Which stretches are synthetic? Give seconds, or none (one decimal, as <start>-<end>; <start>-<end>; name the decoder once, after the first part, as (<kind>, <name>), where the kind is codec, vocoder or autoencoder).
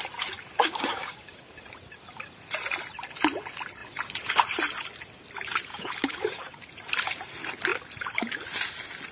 0.6-1.5 (codec, DAC); 5.7-6.6